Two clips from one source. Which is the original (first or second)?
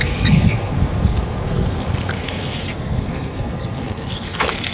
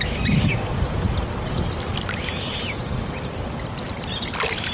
second